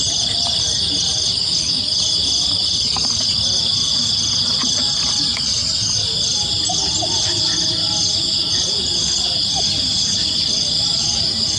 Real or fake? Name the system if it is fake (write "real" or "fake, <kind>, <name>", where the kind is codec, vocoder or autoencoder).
real